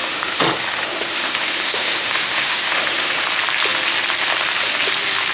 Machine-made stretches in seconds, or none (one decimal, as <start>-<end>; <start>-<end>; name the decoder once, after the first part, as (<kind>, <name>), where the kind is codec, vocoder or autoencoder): 0.0-3.2 (autoencoder, DAC-VAE)